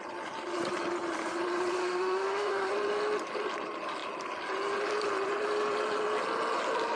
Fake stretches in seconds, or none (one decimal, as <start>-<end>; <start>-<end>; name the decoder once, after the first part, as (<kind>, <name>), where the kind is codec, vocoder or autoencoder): 1.8-2.7 (autoencoder, DAC-VAE)